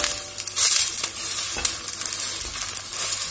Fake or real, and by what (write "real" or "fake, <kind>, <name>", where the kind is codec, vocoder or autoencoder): real